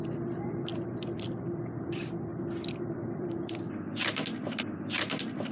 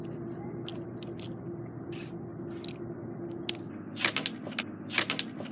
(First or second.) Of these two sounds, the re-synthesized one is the first